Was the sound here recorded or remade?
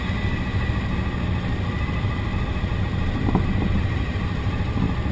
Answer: recorded